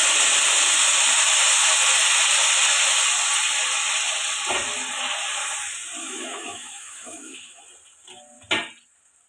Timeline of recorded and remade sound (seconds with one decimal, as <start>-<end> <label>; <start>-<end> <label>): 0.0-6.0 recorded; 6.0-7.6 remade; 7.6-9.3 recorded